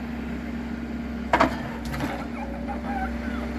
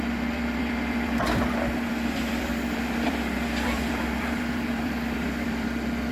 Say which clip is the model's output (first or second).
second